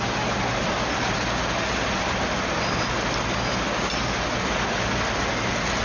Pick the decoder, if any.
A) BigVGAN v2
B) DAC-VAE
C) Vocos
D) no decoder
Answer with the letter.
D